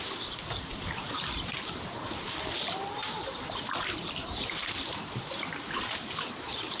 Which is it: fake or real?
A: fake